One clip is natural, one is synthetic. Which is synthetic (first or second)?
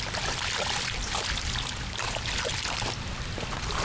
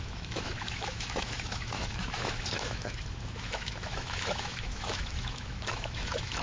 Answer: second